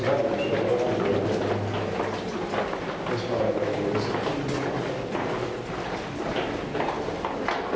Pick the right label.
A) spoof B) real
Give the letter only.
B